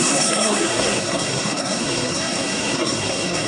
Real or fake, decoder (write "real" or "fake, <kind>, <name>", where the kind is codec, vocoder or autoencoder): fake, codec, SNAC